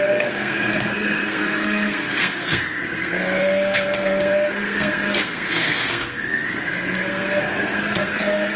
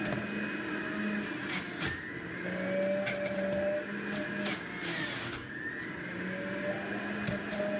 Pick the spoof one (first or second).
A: first